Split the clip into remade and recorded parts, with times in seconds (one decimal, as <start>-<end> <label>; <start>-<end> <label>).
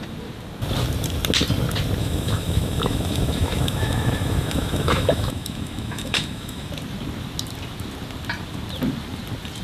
0.0-2.0 recorded; 2.0-6.7 remade; 6.7-9.6 recorded